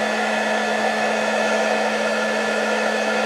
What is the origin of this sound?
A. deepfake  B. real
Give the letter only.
A